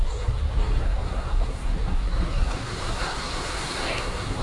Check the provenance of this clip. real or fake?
fake